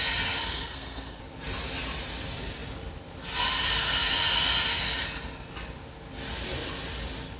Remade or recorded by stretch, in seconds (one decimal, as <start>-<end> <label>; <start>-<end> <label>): 0.0-0.4 recorded; 0.4-1.2 remade; 1.2-7.4 recorded